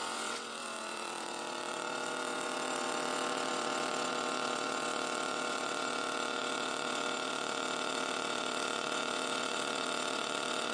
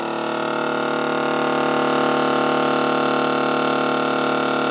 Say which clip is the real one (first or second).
second